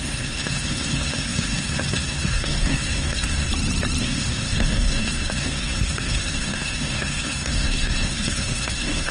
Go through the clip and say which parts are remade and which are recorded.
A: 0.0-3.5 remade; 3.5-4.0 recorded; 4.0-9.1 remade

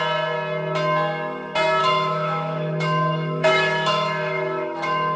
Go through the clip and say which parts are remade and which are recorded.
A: 0.0-1.8 recorded; 1.8-5.2 remade

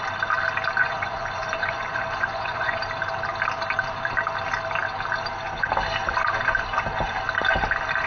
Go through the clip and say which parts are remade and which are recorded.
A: 0.0-0.8 recorded; 0.8-2.8 remade; 2.8-8.1 recorded